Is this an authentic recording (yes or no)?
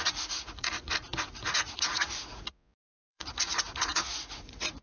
no